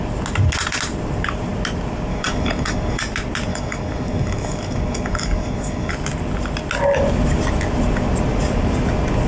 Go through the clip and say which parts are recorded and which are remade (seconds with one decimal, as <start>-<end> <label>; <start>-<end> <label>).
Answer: 0.0-2.1 recorded; 2.1-3.0 remade; 3.0-3.5 recorded; 3.5-5.9 remade; 5.9-9.3 recorded